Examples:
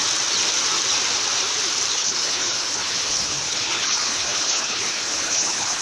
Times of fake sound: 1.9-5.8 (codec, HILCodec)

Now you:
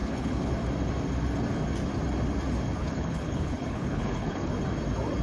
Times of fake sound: 0.0-0.5 (codec, HILCodec); 2.8-4.5

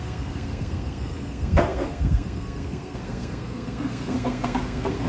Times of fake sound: 0.0-5.1 (codec, SNAC)